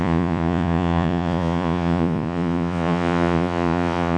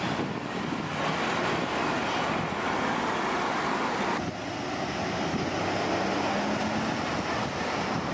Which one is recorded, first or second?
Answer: second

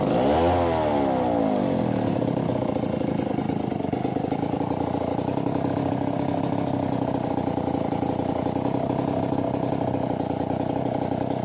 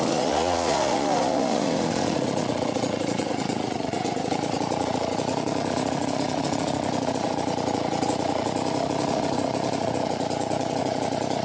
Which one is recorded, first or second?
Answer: first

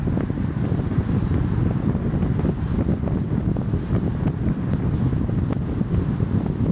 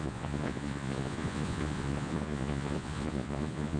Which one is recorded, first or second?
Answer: first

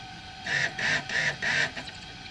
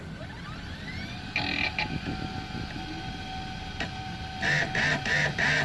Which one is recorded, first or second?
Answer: second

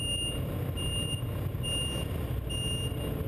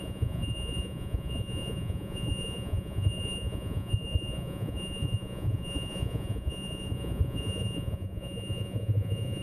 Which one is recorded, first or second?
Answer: first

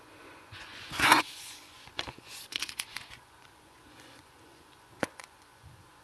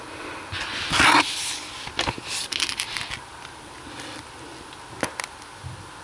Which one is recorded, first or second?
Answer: second